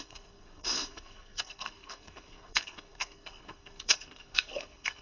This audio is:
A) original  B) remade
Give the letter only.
B